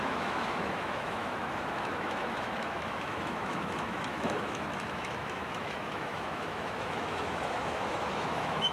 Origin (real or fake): fake